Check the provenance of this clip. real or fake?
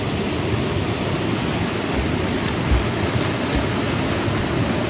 real